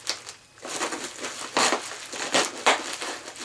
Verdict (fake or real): real